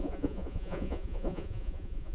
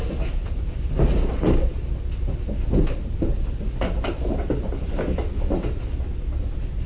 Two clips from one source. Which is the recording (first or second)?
second